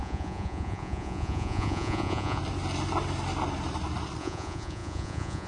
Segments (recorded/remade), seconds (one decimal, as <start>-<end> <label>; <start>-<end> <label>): 0.0-2.4 remade; 2.4-4.2 recorded; 4.2-5.5 remade